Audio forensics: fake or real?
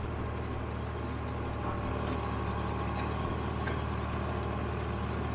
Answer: real